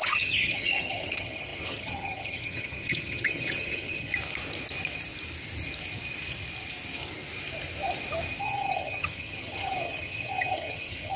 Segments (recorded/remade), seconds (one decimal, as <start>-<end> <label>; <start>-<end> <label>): 0.0-4.1 remade; 4.1-8.4 recorded; 8.4-11.2 remade